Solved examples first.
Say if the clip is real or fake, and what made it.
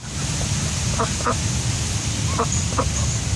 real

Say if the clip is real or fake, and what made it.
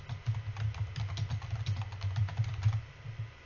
real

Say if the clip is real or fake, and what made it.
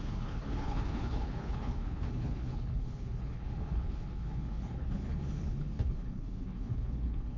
fake, codec, HILCodec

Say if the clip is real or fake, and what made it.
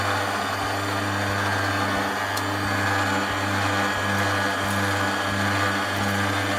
real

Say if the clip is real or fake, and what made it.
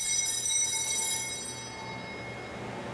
real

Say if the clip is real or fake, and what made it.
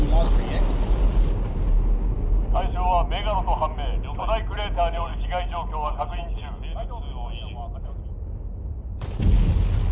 real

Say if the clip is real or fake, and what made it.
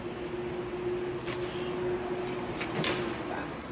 real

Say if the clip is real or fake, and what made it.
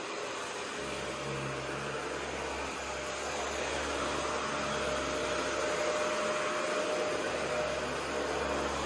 real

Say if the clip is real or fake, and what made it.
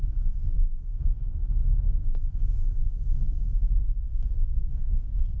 fake, codec, SNAC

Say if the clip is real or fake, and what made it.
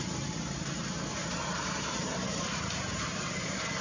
fake, vocoder, BigVGAN v2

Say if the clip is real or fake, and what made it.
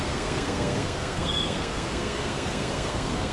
fake, codec, SNAC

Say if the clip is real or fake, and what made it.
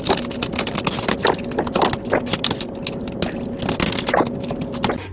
real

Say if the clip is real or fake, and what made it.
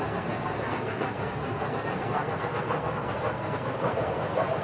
fake, codec, SNAC